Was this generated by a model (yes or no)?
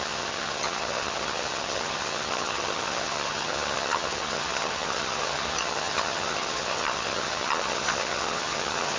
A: yes